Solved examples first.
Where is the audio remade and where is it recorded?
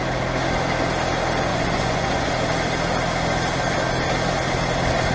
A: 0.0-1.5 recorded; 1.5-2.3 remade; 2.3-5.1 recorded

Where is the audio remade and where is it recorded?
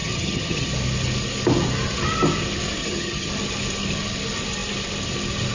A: 0.0-0.7 remade; 0.7-2.8 recorded; 2.8-3.3 remade; 3.3-5.5 recorded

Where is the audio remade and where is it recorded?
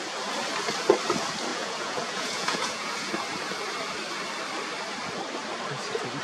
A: 0.0-1.5 recorded; 1.5-3.1 remade; 3.1-6.2 recorded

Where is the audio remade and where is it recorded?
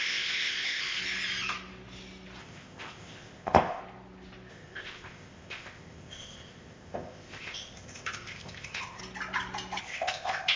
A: 0.0-1.0 remade; 1.0-2.4 recorded; 2.4-3.8 remade; 3.8-4.5 recorded; 4.5-9.0 remade; 9.0-9.8 recorded; 9.8-10.6 remade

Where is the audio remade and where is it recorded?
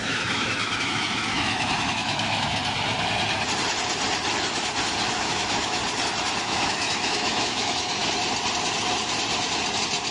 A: 0.0-2.6 remade; 2.6-5.1 recorded; 5.1-5.8 remade; 5.8-6.4 recorded; 6.4-8.0 remade; 8.0-10.1 recorded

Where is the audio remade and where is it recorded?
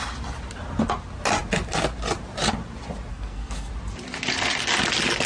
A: 0.0-3.1 recorded; 3.1-3.7 remade; 3.7-5.3 recorded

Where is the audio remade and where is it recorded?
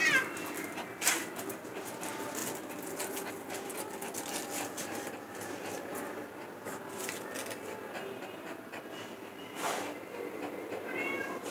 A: 0.0-11.5 recorded